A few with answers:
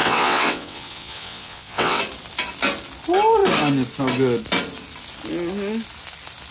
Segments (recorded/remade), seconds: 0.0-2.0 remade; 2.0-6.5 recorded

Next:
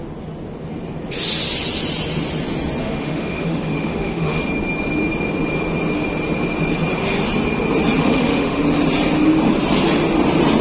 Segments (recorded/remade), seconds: 0.0-2.8 recorded; 2.8-4.4 remade; 4.4-8.0 recorded; 8.0-8.6 remade; 8.6-10.6 recorded

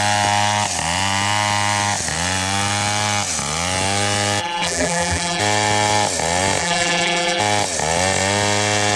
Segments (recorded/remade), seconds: 0.0-4.4 recorded; 4.4-5.4 remade; 5.4-6.6 recorded; 6.6-7.4 remade; 7.4-9.0 recorded